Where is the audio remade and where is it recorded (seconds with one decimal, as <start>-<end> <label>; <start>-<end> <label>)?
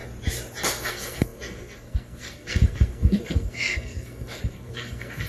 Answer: 0.0-0.7 recorded; 0.7-5.3 remade